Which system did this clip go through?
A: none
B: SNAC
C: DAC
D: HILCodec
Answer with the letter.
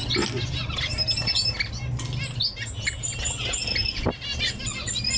A